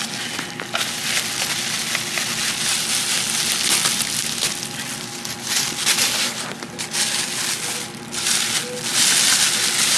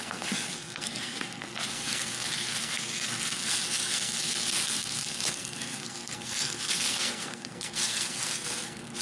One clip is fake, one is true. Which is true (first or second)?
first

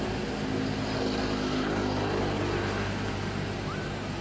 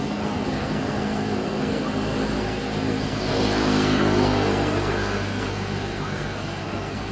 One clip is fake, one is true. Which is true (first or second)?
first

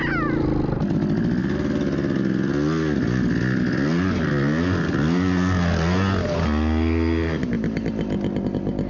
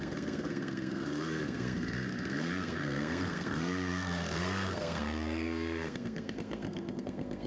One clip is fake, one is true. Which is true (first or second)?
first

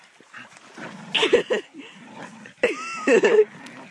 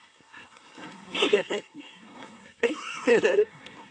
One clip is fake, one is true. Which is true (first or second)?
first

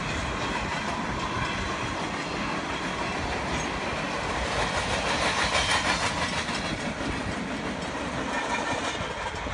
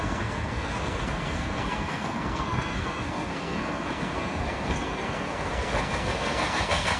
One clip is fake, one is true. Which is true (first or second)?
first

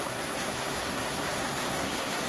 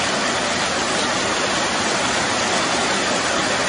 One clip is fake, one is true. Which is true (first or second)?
second